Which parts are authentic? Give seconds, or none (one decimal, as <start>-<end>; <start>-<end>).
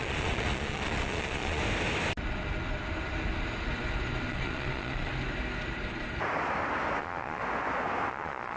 1.6-4.3; 5.1-7.0; 7.4-8.1